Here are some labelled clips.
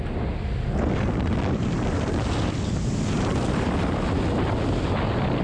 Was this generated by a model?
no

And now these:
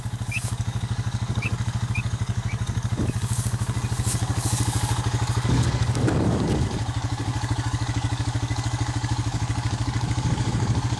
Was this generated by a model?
yes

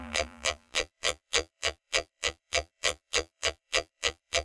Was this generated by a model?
yes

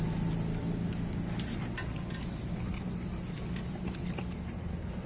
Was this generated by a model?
no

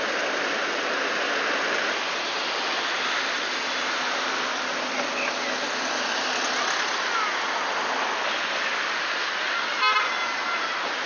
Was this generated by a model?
no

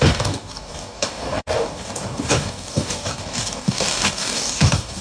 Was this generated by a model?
yes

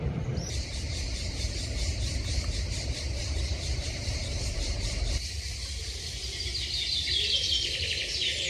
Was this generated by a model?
yes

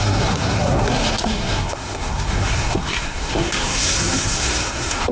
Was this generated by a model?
yes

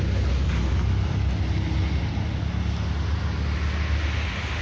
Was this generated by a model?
no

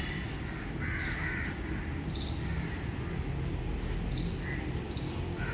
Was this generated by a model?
no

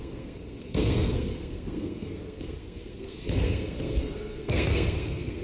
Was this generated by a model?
yes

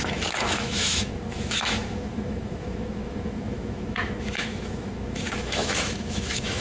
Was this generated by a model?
yes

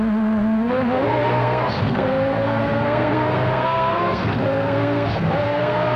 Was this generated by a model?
yes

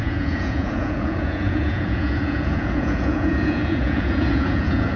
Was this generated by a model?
yes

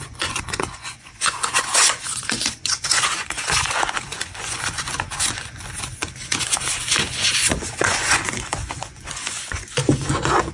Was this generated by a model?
yes